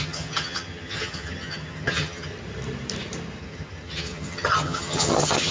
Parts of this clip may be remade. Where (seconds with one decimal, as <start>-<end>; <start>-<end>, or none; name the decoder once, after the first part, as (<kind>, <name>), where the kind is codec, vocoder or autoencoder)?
0.0-2.3 (vocoder, HiFi-GAN); 3.4-5.5